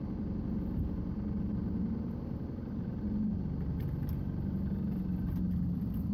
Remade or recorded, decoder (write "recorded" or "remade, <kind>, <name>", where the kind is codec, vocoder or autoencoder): recorded